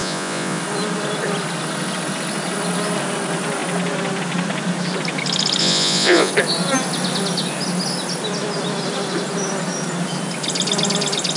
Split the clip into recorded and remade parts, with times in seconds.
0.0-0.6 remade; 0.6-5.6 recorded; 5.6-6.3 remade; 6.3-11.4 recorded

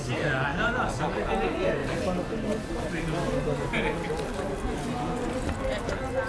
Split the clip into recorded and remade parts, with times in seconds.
0.0-6.3 recorded

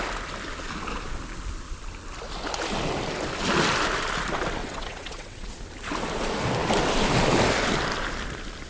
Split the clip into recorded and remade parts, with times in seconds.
0.0-4.6 recorded; 4.6-5.5 remade; 5.5-8.7 recorded

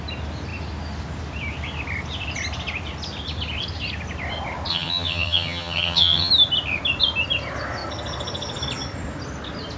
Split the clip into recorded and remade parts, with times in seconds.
0.0-4.7 recorded; 4.7-6.3 remade; 6.3-9.8 recorded

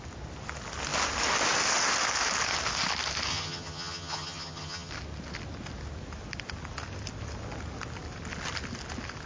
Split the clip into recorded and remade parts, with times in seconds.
0.0-3.3 recorded; 3.3-4.9 remade; 4.9-9.3 recorded